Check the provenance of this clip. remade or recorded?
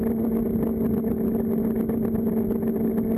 recorded